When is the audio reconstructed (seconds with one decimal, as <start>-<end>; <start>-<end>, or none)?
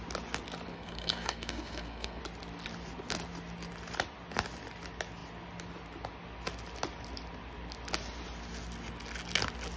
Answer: 0.7-2.2